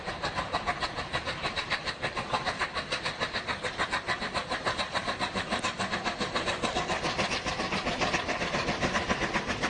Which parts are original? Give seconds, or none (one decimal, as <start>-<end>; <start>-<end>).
0.0-9.7